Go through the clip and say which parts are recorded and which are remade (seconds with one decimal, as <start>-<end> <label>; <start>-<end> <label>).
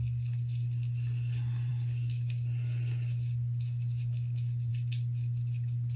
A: 0.0-6.0 recorded